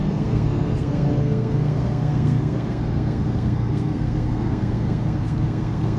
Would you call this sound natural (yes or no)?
no